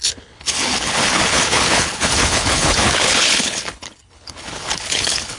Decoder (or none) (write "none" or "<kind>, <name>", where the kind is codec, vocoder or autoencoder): codec, HILCodec